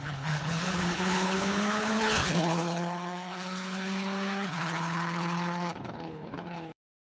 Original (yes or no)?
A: no